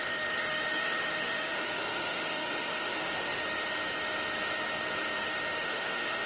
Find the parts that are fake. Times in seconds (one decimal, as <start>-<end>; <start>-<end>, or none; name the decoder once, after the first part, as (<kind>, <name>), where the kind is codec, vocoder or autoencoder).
0.0-3.4 (autoencoder, DAC-VAE); 5.6-6.3